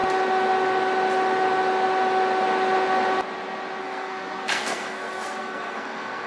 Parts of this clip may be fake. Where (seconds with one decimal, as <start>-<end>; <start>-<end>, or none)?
3.8-6.3